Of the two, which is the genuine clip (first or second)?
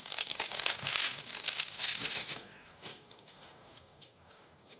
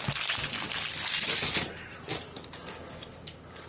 second